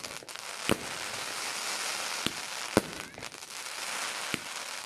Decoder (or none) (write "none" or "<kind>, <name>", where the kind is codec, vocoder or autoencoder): none